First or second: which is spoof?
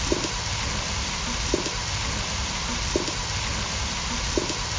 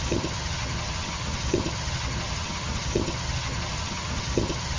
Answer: second